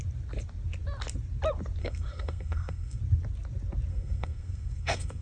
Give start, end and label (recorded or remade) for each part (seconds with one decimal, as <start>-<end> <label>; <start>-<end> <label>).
0.0-1.8 recorded; 1.8-3.0 remade; 3.0-3.9 recorded; 3.9-5.2 remade